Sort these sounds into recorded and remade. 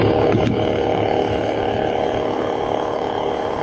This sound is remade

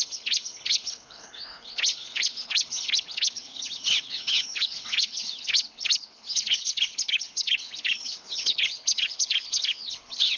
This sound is remade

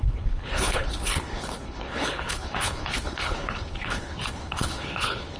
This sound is remade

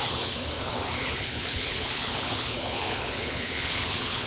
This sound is remade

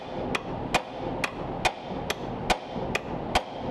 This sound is recorded